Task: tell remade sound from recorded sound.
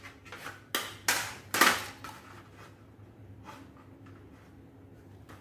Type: recorded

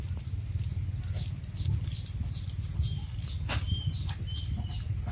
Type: recorded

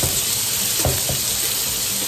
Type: recorded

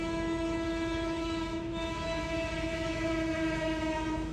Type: remade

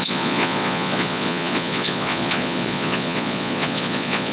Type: remade